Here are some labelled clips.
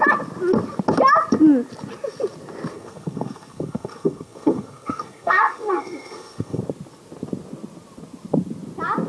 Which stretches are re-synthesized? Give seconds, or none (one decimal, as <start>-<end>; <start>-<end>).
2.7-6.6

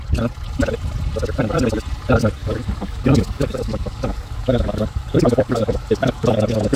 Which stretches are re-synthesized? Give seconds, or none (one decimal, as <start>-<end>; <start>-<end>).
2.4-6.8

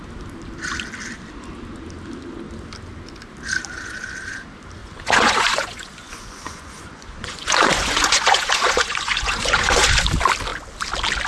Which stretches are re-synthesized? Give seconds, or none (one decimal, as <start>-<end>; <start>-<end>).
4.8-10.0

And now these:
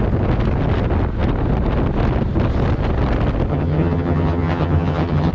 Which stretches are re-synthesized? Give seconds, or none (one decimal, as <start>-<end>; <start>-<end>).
3.5-5.3

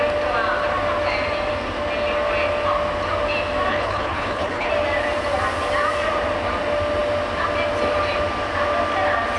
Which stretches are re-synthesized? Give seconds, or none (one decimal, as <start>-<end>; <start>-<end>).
3.7-4.7

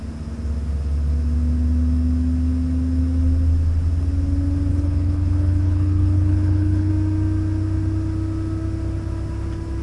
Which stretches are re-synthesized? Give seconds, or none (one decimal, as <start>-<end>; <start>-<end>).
4.7-6.9